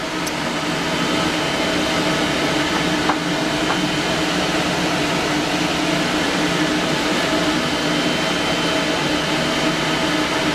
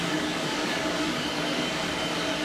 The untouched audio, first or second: first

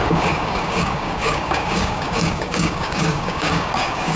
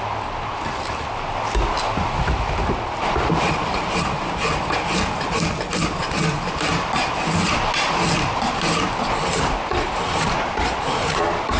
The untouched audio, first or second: second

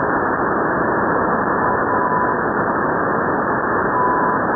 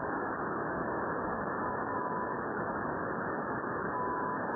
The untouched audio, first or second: first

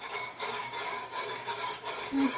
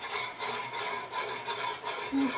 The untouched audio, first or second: second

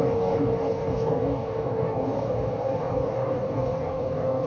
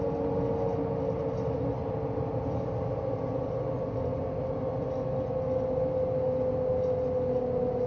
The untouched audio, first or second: second